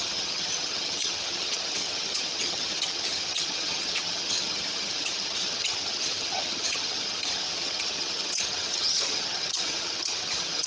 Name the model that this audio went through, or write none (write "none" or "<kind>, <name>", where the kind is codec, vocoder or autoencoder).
vocoder, HiFi-GAN